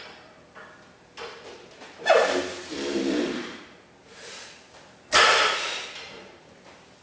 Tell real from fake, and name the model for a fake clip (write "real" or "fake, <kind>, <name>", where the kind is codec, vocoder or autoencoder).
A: real